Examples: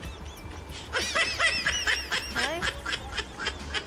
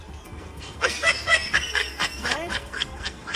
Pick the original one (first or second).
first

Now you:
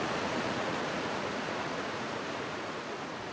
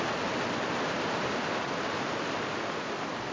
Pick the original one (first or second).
second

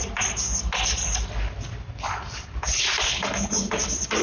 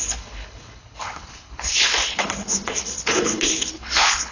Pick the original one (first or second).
first